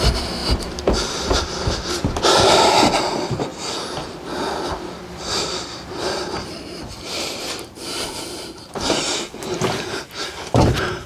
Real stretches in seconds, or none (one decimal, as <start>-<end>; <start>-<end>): 0.0-0.4; 2.2-3.5; 8.7-11.1